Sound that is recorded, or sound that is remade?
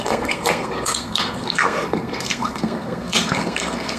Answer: remade